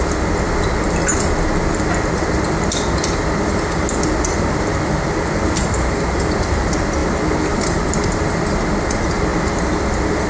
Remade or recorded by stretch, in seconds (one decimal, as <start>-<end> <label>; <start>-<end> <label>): 0.0-10.3 recorded